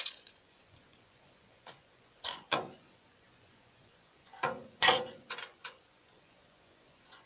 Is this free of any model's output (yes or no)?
no